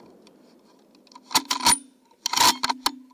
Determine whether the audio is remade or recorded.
recorded